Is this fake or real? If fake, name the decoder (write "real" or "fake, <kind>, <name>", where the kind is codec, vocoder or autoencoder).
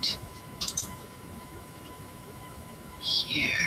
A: fake, autoencoder, DAC-VAE